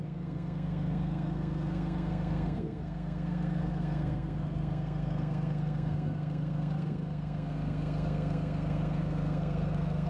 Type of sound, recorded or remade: remade